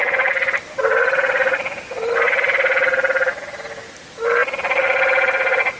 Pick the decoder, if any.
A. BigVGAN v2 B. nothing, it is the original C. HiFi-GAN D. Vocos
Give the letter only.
B